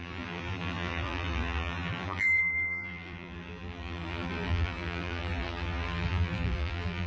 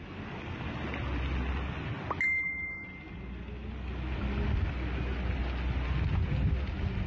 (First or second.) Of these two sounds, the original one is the second